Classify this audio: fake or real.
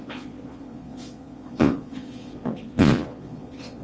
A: fake